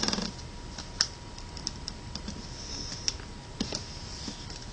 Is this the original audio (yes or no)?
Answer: yes